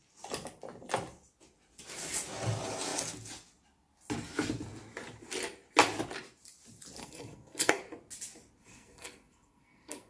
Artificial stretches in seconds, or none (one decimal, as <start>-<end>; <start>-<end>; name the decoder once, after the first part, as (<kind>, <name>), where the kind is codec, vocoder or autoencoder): 7.0-7.8 (codec, SNAC); 8.6-10.1